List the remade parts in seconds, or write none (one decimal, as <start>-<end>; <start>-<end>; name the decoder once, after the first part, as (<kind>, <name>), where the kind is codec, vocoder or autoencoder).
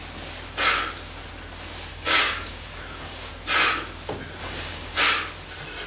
1.9-3.3 (codec, DAC); 4.4-5.0